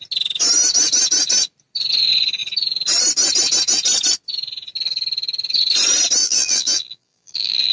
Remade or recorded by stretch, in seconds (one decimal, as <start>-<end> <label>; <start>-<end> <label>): 0.0-6.2 recorded; 6.2-7.7 remade